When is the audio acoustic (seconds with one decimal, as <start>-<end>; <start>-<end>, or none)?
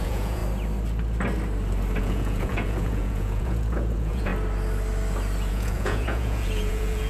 0.4-2.0; 4.3-5.5